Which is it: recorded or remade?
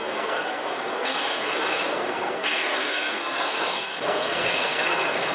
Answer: remade